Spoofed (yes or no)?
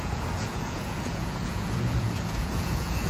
yes